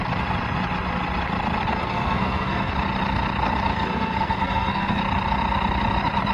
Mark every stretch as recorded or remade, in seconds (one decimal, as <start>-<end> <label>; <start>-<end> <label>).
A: 0.0-1.7 recorded; 1.7-2.7 remade; 2.7-3.7 recorded; 3.7-5.0 remade; 5.0-6.3 recorded